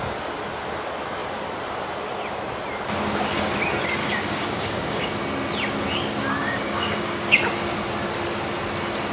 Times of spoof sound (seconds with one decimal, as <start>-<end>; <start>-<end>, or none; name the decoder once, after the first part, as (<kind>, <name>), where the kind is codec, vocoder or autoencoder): 4.0-5.1 (codec, DAC); 6.4-7.4